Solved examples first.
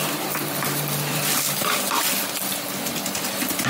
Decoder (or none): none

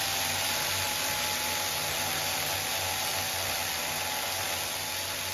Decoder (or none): none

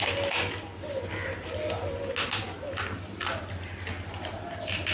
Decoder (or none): none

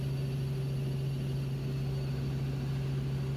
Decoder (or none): none